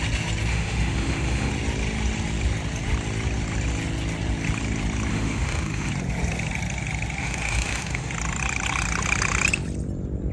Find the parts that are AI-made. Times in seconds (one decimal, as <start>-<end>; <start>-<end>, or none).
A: 0.5-1.5; 5.1-5.9; 7.2-8.1